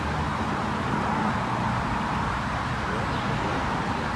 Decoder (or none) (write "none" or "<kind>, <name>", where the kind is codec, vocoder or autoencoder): none